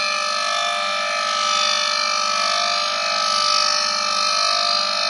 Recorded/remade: recorded